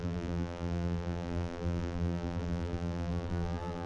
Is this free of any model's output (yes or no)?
no